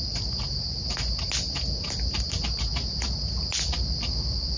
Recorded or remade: recorded